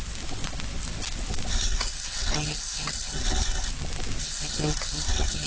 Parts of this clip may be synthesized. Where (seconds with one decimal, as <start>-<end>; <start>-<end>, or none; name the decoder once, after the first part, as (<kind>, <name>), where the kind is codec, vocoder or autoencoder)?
1.5-3.7 (codec, SNAC); 4.2-5.5